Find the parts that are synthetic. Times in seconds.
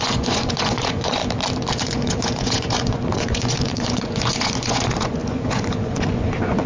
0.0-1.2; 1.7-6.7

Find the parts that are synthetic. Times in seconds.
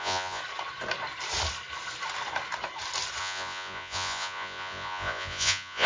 0.0-0.4; 3.2-5.9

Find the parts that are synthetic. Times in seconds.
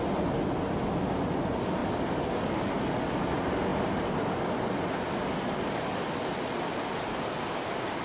none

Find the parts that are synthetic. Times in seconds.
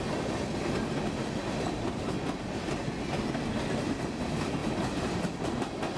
none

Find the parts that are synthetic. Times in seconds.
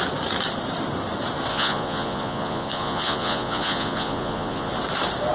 1.5-4.7